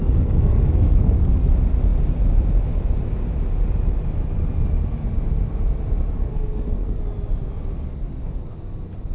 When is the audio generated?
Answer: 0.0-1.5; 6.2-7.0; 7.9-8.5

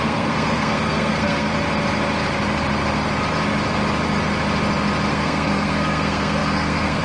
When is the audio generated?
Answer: 0.0-1.5; 5.1-7.0

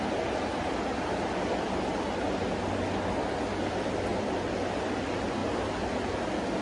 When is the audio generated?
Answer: none

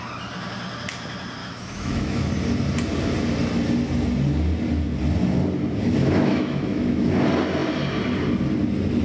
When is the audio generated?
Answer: 1.4-2.3; 6.0-7.1

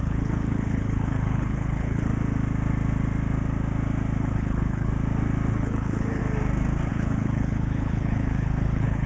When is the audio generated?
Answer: 0.0-2.1; 4.2-4.9; 5.5-6.2; 6.9-9.1